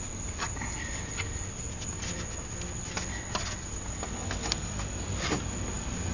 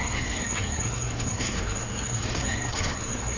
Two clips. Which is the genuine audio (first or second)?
first